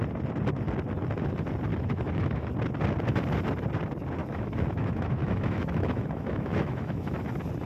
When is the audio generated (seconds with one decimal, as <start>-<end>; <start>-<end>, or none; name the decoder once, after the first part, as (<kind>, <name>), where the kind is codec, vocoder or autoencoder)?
1.7-2.5 (autoencoder, DAC-VAE); 4.2-7.3